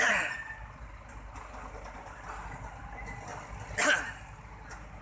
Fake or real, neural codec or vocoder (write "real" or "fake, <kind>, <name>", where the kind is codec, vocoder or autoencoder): real